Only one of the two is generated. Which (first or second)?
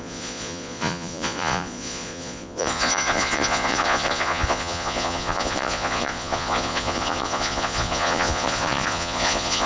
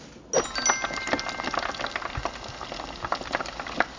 first